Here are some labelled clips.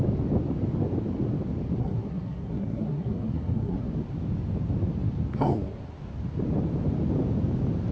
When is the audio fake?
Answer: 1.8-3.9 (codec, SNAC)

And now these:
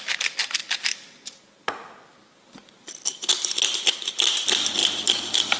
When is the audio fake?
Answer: none